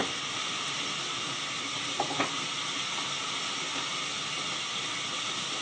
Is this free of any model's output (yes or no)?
yes